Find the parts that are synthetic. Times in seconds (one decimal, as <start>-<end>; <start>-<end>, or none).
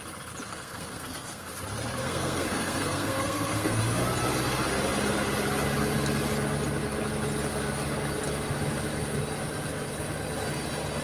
0.5-1.5; 2.0-3.8